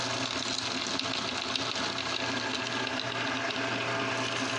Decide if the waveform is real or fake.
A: real